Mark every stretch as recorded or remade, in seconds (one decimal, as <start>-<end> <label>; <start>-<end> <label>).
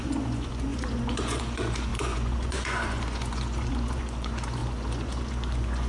0.0-5.9 remade